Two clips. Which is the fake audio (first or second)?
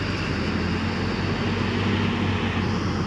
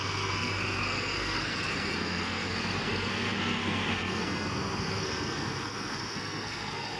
second